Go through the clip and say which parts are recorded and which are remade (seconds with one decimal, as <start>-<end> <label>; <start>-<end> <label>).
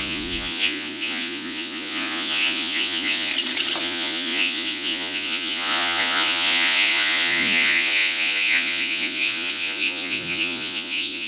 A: 0.0-3.3 remade; 3.3-3.8 recorded; 3.8-11.3 remade